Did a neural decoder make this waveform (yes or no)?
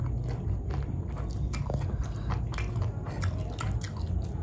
no